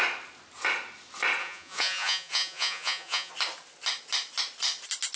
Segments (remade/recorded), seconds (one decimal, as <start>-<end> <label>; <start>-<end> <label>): 0.0-1.4 recorded; 1.4-3.3 remade; 3.3-5.2 recorded